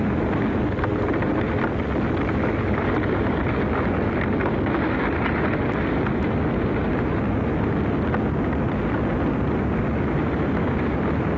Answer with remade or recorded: recorded